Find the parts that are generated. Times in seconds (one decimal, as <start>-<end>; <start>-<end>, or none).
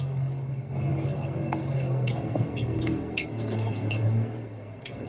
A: 0.0-5.1